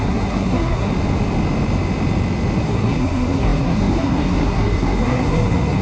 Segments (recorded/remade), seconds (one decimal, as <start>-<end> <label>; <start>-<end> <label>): 0.0-0.9 remade; 0.9-2.6 recorded; 2.6-5.8 remade